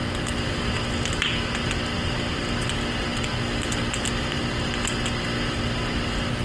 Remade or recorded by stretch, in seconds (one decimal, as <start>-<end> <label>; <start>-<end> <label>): 0.0-6.4 recorded